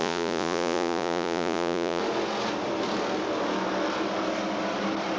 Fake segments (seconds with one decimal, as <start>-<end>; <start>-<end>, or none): 0.0-2.0